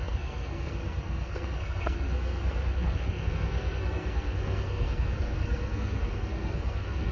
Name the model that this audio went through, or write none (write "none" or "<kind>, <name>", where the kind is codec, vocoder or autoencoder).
codec, SNAC